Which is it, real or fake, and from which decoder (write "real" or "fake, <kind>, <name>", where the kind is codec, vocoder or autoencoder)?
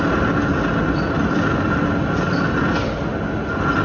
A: real